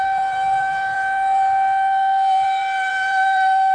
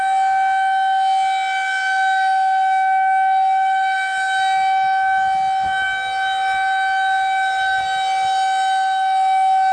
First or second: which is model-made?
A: first